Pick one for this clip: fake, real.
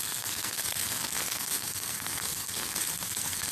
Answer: fake